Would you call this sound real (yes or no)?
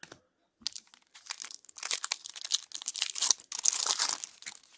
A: yes